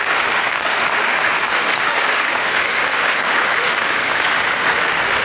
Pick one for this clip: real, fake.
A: fake